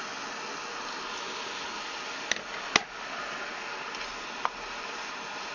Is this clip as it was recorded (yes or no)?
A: yes